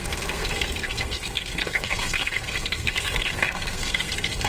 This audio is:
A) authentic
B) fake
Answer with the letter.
B